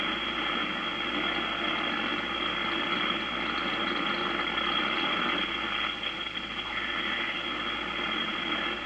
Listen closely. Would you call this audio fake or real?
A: real